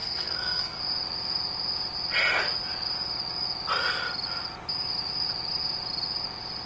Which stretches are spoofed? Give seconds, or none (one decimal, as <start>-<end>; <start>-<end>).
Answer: 0.0-0.8